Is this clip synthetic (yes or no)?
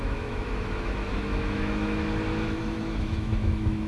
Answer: yes